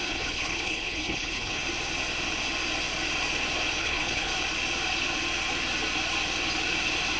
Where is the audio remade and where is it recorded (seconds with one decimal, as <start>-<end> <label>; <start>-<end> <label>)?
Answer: 0.0-1.6 remade; 1.6-3.8 recorded; 3.8-4.3 remade; 4.3-7.2 recorded